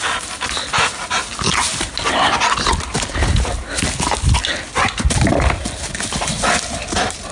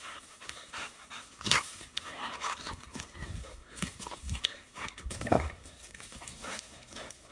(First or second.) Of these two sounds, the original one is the first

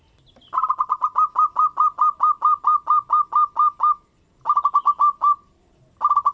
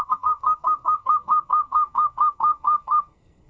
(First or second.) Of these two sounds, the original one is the first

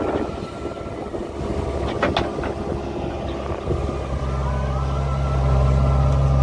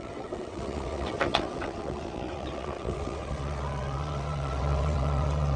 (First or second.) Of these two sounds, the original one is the first